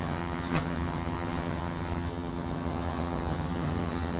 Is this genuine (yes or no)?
no